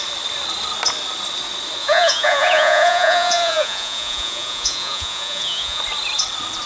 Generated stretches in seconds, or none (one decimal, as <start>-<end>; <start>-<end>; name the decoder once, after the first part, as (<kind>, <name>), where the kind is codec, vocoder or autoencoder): 1.8-5.8 (vocoder, Vocos)